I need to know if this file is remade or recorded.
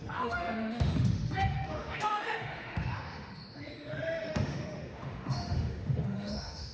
remade